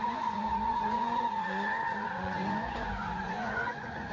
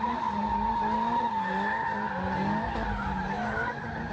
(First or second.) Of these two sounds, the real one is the second